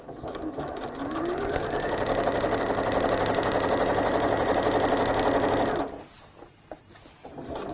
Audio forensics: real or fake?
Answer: real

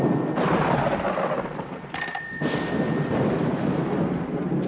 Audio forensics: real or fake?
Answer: real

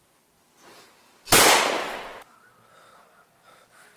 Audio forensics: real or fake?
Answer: real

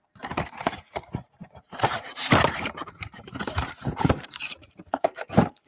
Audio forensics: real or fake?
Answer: fake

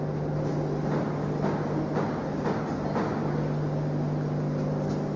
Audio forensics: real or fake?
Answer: real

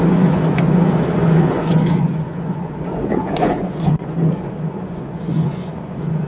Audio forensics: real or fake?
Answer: fake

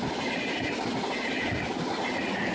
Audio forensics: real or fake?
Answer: real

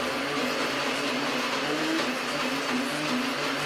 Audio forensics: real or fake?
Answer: real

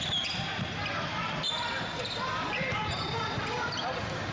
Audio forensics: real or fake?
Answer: real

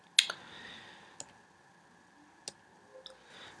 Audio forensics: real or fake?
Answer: real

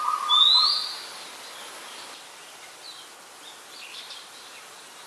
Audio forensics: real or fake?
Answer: real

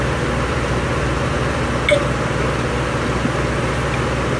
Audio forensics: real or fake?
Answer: real